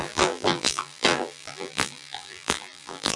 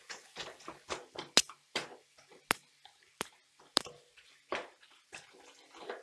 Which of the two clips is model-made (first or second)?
first